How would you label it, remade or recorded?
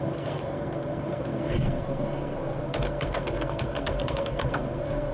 remade